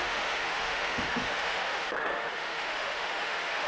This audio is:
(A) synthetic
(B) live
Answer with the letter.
A